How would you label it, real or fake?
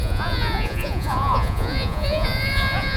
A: fake